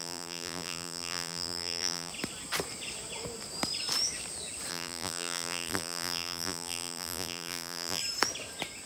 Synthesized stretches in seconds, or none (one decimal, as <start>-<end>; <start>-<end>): 0.0-2.1; 4.7-8.0